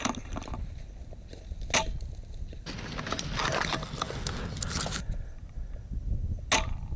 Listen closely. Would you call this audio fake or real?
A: real